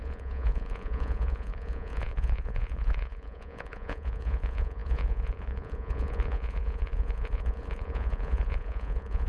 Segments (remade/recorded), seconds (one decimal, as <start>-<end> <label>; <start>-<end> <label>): 0.0-9.3 remade